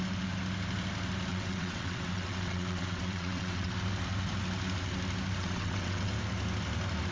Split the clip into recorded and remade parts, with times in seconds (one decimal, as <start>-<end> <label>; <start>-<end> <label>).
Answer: 0.0-1.3 recorded; 1.3-3.7 remade; 3.7-5.4 recorded; 5.4-6.1 remade; 6.1-7.1 recorded